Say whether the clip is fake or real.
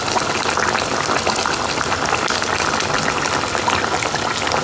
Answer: real